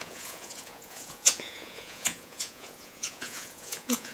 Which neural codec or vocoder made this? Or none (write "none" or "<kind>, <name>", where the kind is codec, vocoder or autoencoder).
vocoder, Vocos